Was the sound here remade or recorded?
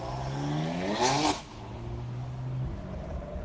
recorded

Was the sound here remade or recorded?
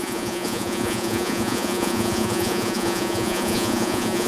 remade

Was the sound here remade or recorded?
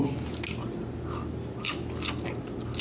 recorded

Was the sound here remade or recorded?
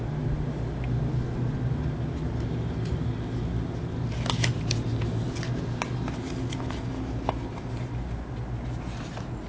recorded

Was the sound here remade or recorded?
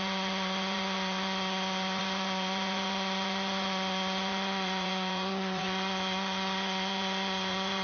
remade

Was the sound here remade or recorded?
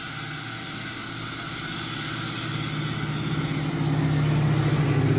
recorded